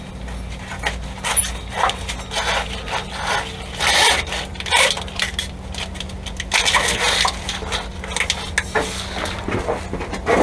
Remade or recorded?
recorded